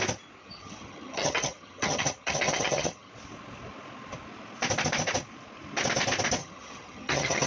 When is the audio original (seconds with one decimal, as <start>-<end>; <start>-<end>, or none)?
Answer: 0.0-0.4; 3.1-6.4